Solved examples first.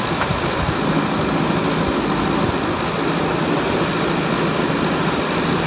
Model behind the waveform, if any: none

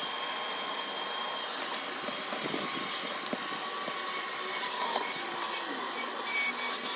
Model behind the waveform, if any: none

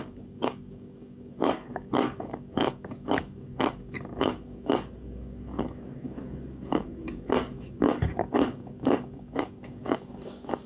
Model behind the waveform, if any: codec, DAC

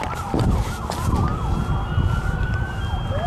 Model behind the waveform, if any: none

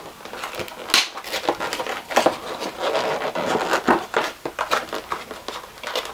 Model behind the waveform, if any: none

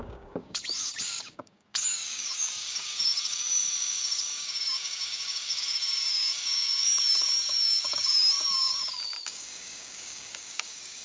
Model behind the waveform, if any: codec, DAC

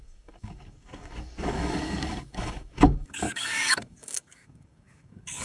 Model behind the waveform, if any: codec, DAC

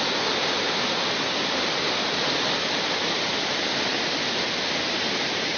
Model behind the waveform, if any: none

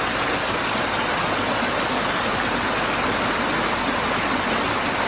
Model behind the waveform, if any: none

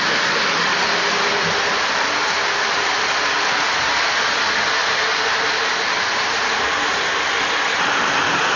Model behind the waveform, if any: none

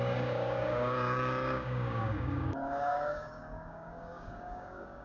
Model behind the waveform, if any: codec, DAC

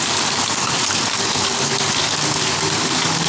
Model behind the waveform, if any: codec, DAC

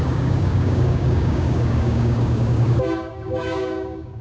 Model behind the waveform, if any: codec, DAC